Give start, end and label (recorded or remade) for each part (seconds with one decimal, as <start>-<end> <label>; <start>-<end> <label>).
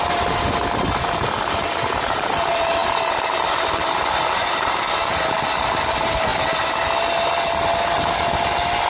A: 0.0-3.8 recorded; 3.8-4.8 remade; 4.8-8.9 recorded